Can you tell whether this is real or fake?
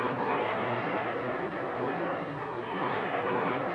fake